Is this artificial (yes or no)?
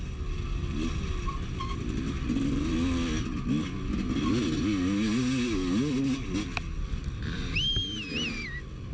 no